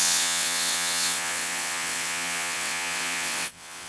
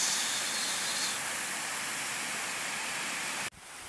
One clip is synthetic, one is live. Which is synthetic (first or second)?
first